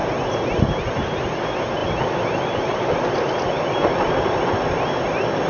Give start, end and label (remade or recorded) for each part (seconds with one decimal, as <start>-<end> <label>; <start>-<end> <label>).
0.0-5.5 recorded